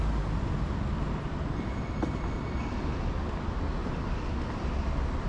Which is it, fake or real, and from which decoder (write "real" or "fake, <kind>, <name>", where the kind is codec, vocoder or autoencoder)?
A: real